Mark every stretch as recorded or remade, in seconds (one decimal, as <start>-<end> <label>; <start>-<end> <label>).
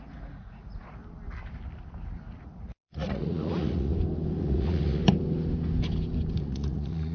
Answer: 0.0-1.0 remade; 1.0-2.4 recorded; 2.4-3.9 remade; 3.9-4.4 recorded; 4.4-5.0 remade; 5.0-6.4 recorded; 6.4-7.1 remade